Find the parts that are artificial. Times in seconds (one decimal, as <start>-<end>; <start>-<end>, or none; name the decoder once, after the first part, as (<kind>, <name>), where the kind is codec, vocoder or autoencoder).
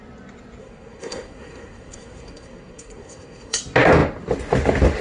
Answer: 0.6-3.6 (codec, SNAC)